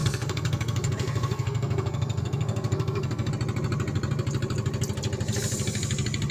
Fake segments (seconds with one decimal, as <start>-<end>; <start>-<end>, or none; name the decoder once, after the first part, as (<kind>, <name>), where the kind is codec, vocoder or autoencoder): 0.0-3.3 (codec, SNAC)